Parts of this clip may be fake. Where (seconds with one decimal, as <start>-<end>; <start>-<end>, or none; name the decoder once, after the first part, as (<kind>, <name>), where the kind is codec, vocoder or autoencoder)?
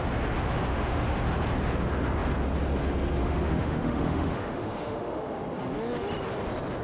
0.7-1.2 (autoencoder, DAC-VAE); 3.2-5.4